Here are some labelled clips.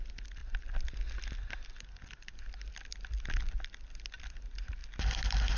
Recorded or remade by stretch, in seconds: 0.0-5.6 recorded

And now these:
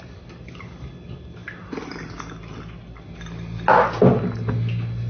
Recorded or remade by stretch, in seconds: 0.0-5.1 recorded

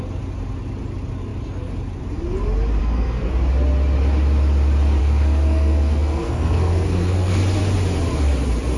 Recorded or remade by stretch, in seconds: 0.0-2.8 recorded; 2.8-3.3 remade; 3.3-5.0 recorded; 5.0-7.4 remade; 7.4-8.8 recorded

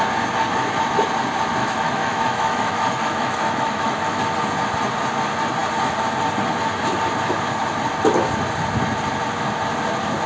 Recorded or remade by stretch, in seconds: 0.0-1.6 recorded; 1.6-4.2 remade; 4.2-10.3 recorded

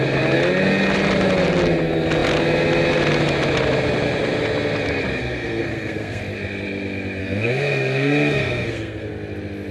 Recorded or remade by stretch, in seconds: 0.0-5.2 recorded; 5.2-6.2 remade; 6.2-7.2 recorded; 7.2-9.1 remade; 9.1-9.7 recorded

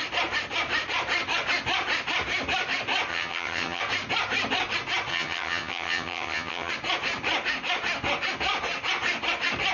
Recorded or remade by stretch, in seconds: 0.0-3.1 recorded; 3.1-3.8 remade; 3.8-5.1 recorded; 5.1-6.7 remade; 6.7-9.7 recorded

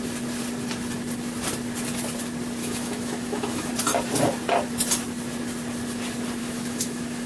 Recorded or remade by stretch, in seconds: 0.0-2.6 recorded; 2.6-3.7 remade; 3.7-6.4 recorded; 6.4-7.3 remade

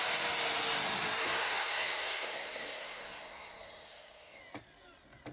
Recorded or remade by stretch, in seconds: 0.0-1.2 recorded; 1.2-4.4 remade; 4.4-5.3 recorded